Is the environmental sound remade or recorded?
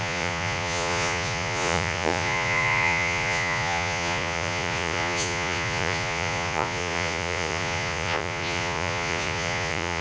remade